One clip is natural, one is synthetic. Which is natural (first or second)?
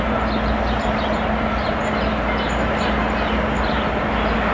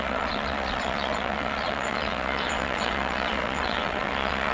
first